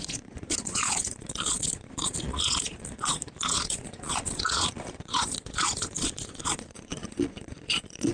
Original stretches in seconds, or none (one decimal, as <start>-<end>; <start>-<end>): none